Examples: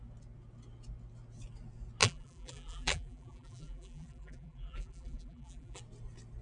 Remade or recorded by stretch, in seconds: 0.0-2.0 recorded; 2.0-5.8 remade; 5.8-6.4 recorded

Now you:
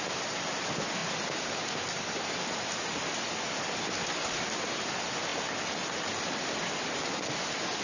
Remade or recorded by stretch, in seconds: 0.0-7.8 recorded

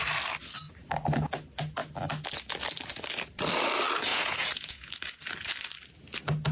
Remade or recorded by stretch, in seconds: 0.0-4.1 recorded; 4.1-4.9 remade; 4.9-6.5 recorded

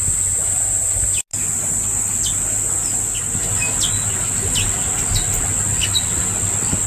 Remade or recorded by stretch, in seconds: 0.0-6.9 recorded

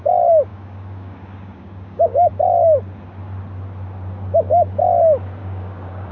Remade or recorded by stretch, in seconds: 0.0-0.5 recorded; 0.5-2.3 remade; 2.3-5.4 recorded; 5.4-6.1 remade

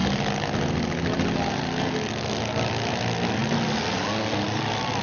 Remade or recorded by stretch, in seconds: 0.0-5.0 recorded

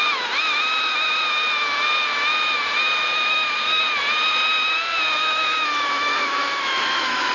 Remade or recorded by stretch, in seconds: 0.0-3.1 recorded; 3.1-3.8 remade; 3.8-5.2 recorded; 5.2-7.3 remade

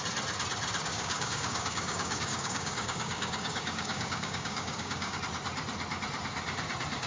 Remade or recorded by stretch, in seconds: 0.0-0.9 recorded; 0.9-5.2 remade; 5.2-7.1 recorded